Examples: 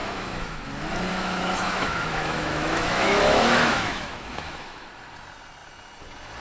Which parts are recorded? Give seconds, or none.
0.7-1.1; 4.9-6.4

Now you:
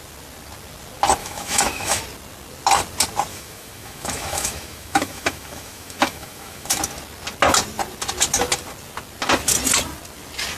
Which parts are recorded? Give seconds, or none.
0.0-1.2; 2.0-3.3; 6.8-10.6

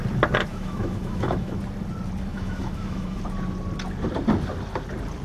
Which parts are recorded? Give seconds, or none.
0.0-0.5; 1.6-2.3; 3.2-5.2

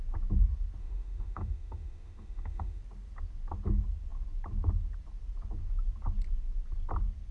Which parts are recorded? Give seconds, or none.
0.0-0.8; 2.8-7.3

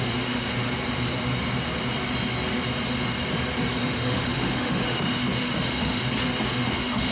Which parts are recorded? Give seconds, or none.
0.5-3.8; 6.0-6.5

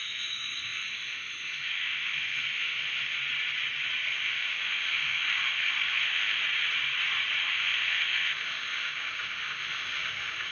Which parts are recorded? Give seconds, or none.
3.2-4.1; 6.4-7.4

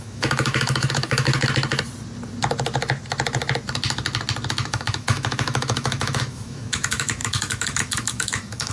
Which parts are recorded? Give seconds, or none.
1.3-4.5

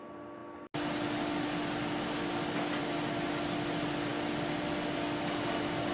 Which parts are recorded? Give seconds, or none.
0.0-5.9